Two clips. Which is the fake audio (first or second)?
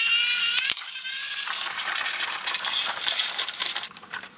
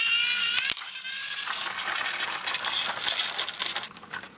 first